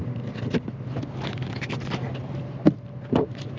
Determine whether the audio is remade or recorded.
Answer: recorded